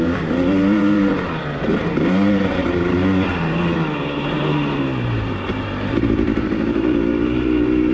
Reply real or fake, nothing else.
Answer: fake